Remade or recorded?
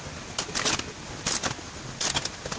recorded